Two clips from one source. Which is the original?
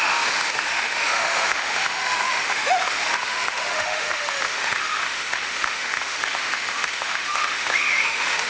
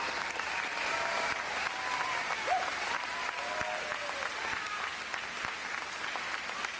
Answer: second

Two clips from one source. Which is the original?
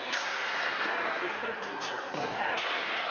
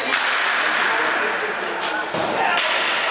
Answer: second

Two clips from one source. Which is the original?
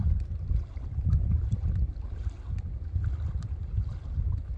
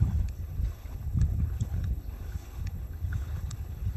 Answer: first